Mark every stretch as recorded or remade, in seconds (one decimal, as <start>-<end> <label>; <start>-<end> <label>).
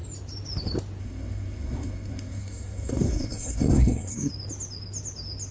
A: 0.0-1.0 recorded; 1.0-4.3 remade; 4.3-5.5 recorded